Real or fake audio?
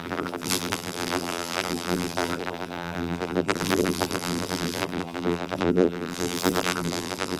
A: fake